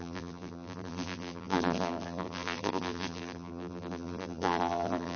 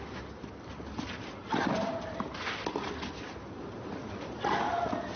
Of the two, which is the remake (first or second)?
first